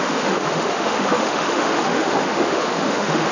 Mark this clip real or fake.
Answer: fake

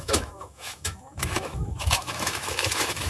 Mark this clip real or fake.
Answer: fake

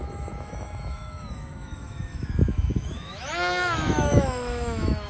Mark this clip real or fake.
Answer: fake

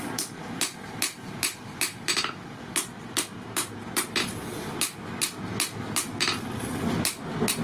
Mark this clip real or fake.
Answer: real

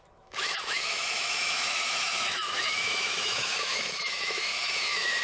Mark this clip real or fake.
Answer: fake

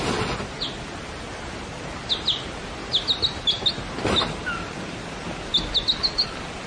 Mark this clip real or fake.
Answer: real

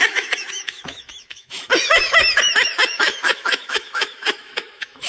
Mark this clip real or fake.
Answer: fake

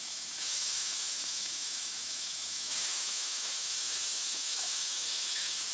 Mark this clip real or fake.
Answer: fake